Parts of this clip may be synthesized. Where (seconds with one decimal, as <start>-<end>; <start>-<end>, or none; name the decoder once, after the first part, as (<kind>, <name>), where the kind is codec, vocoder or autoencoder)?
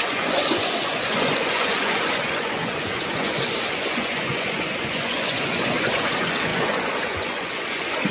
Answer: 0.0-8.1 (vocoder, Vocos)